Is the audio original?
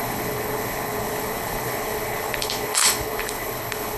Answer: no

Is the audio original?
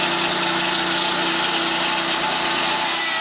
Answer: yes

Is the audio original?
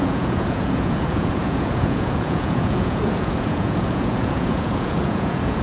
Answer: no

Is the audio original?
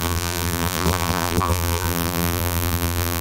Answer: no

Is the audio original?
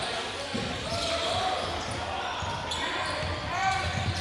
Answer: yes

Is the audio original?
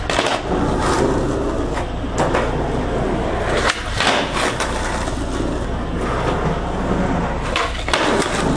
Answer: yes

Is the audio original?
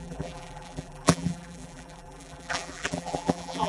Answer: no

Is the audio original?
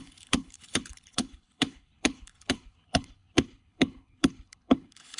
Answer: no